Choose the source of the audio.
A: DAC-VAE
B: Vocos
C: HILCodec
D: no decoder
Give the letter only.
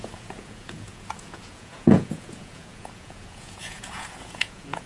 B